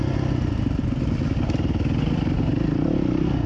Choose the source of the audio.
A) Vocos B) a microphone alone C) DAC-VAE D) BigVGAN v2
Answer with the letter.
B